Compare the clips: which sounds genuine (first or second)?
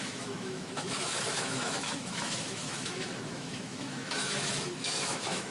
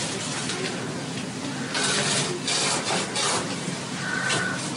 second